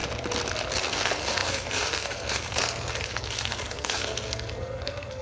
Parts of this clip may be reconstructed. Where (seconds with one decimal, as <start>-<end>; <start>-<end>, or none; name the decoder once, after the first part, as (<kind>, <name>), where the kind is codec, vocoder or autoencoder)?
0.8-5.2 (codec, SNAC)